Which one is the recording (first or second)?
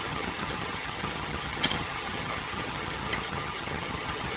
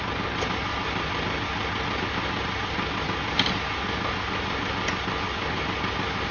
second